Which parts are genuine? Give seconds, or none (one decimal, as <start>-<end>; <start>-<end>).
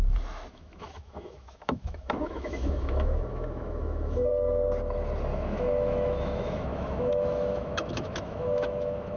0.0-0.5; 4.3-5.3